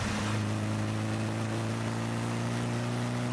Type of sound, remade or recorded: recorded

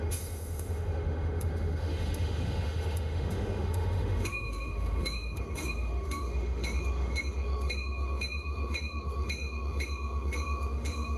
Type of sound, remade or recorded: remade